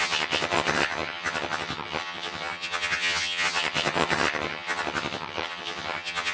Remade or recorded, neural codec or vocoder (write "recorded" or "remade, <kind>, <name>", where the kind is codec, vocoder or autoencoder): remade, vocoder, HiFi-GAN